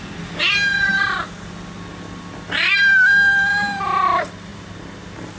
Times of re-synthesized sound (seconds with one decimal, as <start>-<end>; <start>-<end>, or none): none